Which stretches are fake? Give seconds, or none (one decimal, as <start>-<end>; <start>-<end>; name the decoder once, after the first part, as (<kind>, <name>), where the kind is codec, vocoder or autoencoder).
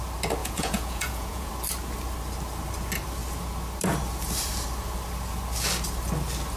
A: 0.4-1.5 (vocoder, Vocos)